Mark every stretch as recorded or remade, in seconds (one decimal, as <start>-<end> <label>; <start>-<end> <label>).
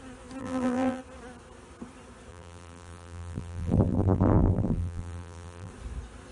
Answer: 0.0-0.4 recorded; 0.4-1.0 remade; 1.0-2.3 recorded; 2.3-5.7 remade; 5.7-6.3 recorded